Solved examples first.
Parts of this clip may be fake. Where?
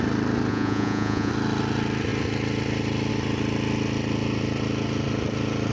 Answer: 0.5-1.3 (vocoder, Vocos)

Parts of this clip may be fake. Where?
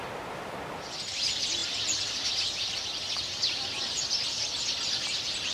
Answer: none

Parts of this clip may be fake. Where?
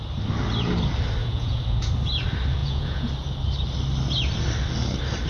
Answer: 1.2-1.9 (vocoder, Vocos); 2.6-3.1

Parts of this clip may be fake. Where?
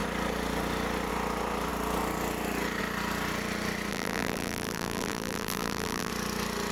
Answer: 3.9-6.1 (vocoder, BigVGAN v2)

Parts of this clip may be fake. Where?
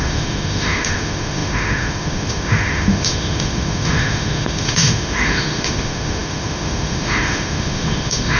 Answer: 0.0-8.4 (autoencoder, DAC-VAE)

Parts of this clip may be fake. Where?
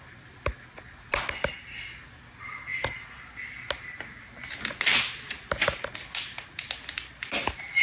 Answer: none